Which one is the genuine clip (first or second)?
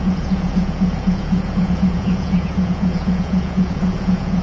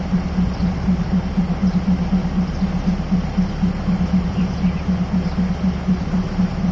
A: second